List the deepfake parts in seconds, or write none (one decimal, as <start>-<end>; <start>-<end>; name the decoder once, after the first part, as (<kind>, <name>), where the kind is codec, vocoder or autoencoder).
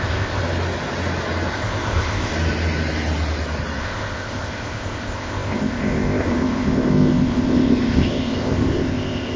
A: 0.0-0.4 (codec, ZipCodec); 1.5-2.3; 3.8-9.4